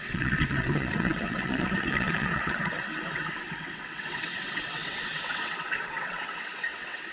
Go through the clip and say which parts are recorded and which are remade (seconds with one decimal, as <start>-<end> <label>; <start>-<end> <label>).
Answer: 0.0-7.1 remade